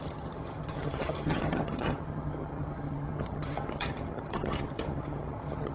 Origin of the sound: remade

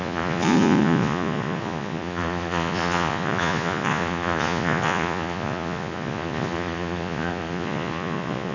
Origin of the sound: remade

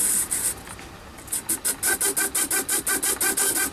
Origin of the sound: recorded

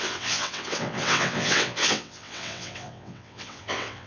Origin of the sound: remade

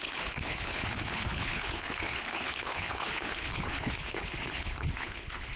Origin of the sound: remade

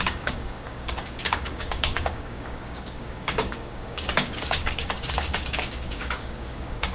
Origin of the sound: remade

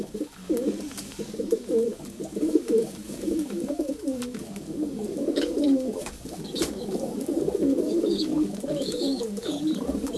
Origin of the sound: remade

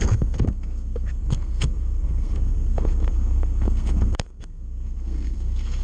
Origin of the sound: remade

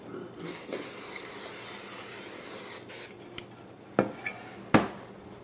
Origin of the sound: recorded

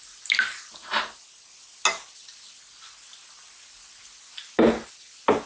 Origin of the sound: recorded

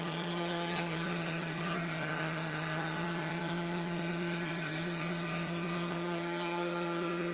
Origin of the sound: remade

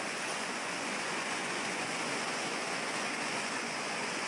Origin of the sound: remade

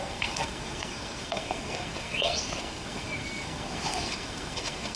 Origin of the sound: remade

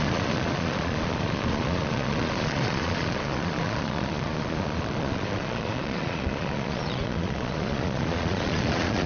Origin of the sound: remade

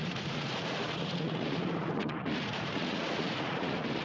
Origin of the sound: remade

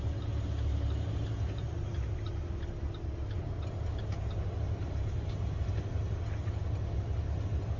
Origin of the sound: recorded